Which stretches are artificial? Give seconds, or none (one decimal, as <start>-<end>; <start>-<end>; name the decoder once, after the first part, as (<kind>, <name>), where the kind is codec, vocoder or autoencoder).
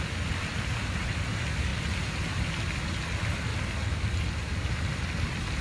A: none